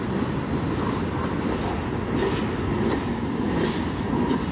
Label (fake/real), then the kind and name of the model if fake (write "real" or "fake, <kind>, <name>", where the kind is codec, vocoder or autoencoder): real